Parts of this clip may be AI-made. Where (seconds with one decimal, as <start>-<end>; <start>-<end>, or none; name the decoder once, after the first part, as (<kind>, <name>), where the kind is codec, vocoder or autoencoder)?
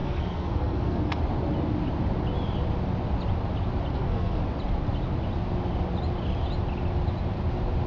0.0-1.2 (codec, SNAC); 3.9-4.4